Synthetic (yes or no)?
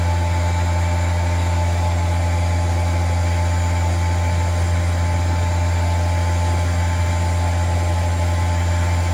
no